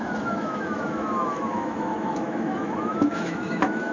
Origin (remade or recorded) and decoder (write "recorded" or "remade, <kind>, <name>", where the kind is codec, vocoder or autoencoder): remade, autoencoder, DAC-VAE